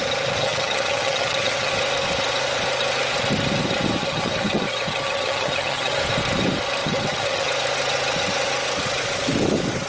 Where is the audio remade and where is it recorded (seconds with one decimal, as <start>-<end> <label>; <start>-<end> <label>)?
0.0-0.4 recorded; 0.4-1.7 remade; 1.7-4.0 recorded; 4.0-5.9 remade; 5.9-6.8 recorded; 6.8-7.5 remade; 7.5-9.9 recorded